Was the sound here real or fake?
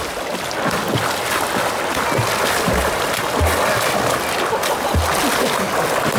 real